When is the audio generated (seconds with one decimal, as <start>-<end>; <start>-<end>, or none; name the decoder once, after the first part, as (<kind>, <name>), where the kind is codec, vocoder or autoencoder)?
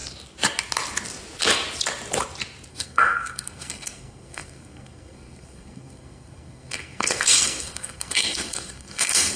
2.7-9.4 (codec, SNAC)